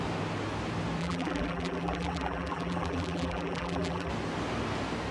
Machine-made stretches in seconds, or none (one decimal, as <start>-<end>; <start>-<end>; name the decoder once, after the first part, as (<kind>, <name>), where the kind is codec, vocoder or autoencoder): 1.0-4.1 (vocoder, BigVGAN v2)